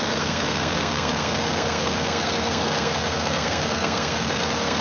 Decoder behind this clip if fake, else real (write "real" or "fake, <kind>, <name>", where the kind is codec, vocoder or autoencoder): fake, codec, SNAC